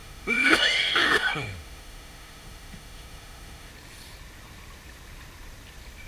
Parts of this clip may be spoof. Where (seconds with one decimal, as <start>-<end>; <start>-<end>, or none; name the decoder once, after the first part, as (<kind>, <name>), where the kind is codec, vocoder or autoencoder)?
0.0-3.7 (autoencoder, DAC-VAE)